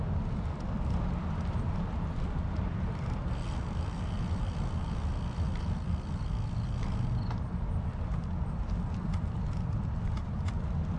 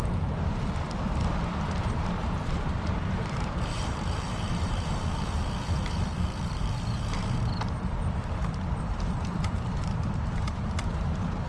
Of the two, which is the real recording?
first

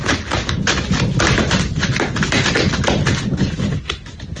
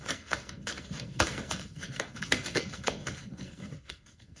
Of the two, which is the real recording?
first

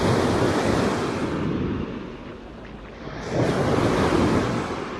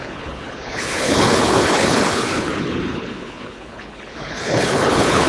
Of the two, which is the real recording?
first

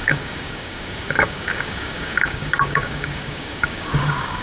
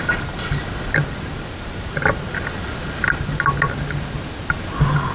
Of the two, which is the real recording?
second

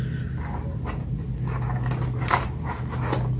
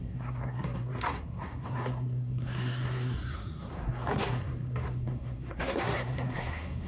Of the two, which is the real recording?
first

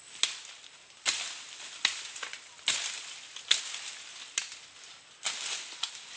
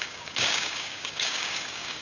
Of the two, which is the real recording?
first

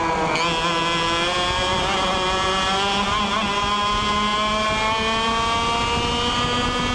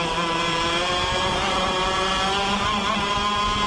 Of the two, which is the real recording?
first